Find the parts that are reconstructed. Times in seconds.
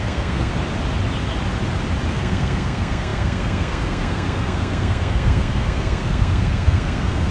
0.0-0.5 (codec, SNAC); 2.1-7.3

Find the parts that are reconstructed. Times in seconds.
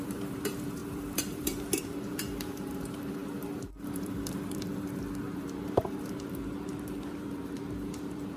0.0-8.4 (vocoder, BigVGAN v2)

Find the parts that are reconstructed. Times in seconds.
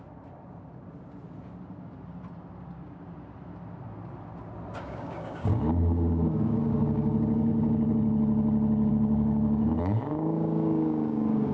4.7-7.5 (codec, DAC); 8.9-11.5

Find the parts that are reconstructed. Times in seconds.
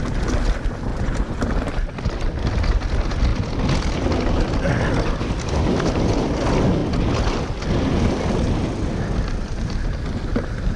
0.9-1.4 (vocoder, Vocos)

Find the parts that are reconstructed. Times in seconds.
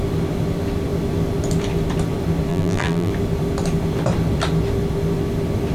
2.5-3.1 (vocoder, BigVGAN v2)